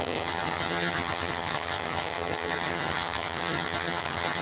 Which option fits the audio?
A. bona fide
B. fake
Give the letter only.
B